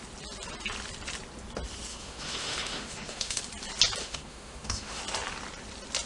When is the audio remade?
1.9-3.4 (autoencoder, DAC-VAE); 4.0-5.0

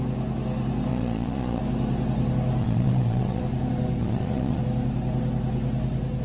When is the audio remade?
0.9-1.6 (vocoder, Vocos); 2.6-3.4; 4.0-4.6

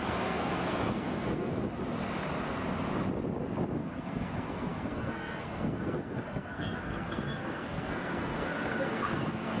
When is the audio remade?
0.0-1.5 (codec, SNAC); 3.8-9.6

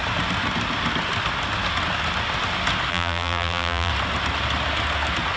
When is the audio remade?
2.9-3.9 (vocoder, BigVGAN v2)

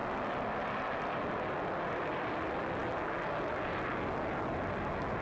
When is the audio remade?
none

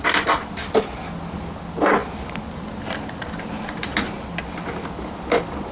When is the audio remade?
none

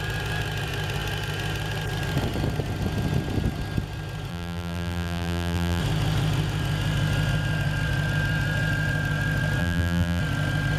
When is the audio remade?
4.3-5.8 (vocoder, BigVGAN v2); 9.6-10.2